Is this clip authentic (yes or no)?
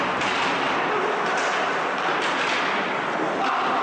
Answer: yes